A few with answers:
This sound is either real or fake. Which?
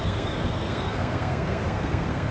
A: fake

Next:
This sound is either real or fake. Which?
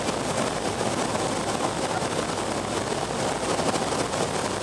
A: real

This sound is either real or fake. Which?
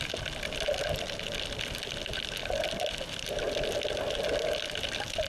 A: real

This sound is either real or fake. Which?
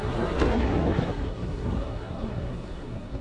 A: fake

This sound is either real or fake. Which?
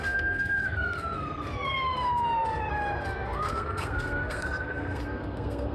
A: fake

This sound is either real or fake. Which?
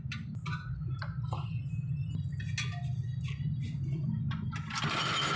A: real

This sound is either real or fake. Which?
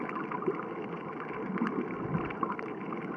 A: real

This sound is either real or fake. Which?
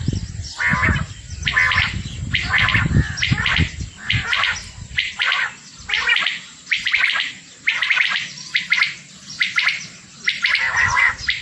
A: real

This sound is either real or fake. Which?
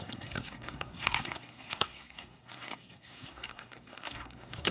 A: fake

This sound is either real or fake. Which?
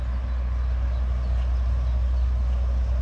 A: real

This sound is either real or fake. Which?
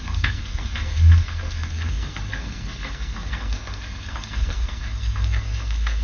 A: fake